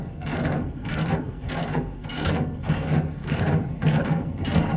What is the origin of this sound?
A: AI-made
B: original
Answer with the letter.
A